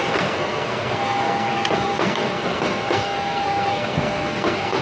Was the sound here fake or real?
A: fake